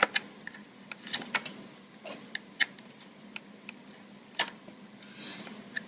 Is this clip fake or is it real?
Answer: real